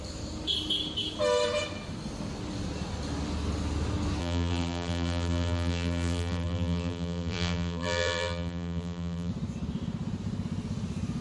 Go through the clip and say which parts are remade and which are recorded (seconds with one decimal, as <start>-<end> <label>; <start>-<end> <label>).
0.0-4.2 recorded; 4.2-9.3 remade; 9.3-11.2 recorded